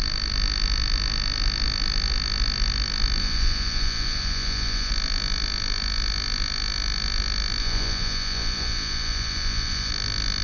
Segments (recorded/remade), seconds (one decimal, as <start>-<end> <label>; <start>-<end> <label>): 0.0-3.2 recorded; 3.2-4.9 remade; 4.9-7.6 recorded; 7.6-9.9 remade; 9.9-10.4 recorded